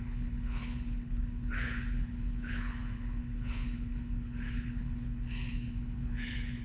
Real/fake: fake